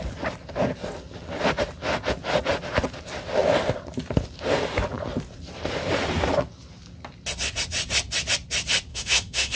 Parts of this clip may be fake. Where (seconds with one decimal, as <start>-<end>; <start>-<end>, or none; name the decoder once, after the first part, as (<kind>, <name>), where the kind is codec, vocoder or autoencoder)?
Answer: 8.9-9.6 (autoencoder, DAC-VAE)